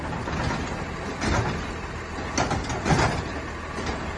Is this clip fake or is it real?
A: real